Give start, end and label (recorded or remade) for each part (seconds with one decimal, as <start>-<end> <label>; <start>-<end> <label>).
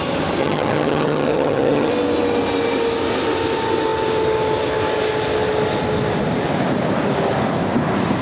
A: 0.0-0.4 recorded; 0.4-1.9 remade; 1.9-8.2 recorded